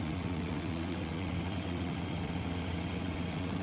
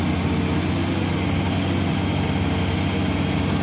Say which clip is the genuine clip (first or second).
second